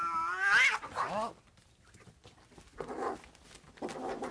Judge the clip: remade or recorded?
recorded